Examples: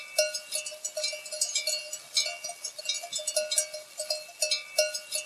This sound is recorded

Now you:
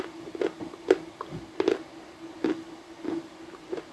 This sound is recorded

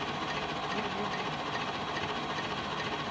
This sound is recorded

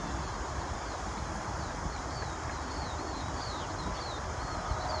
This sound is recorded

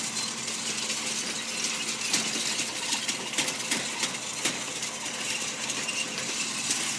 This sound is recorded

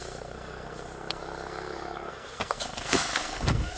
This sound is remade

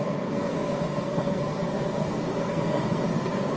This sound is remade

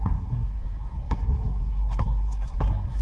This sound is remade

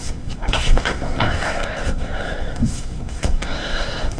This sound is remade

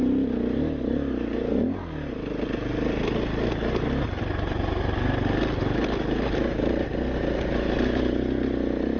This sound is recorded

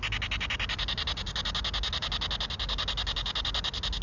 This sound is recorded